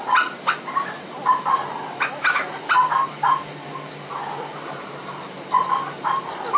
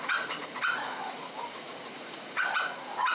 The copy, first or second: second